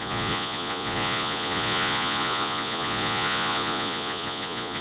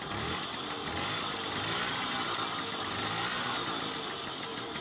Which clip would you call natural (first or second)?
second